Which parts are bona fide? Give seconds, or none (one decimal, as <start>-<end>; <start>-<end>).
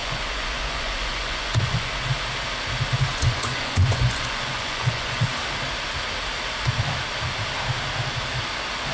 1.9-3.1; 5.3-8.9